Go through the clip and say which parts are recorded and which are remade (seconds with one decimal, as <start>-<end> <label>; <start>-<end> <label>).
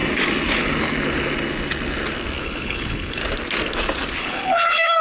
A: 0.0-2.4 recorded; 2.4-3.2 remade; 3.2-4.2 recorded; 4.2-5.0 remade